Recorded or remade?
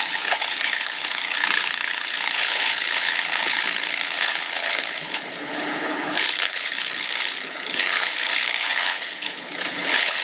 remade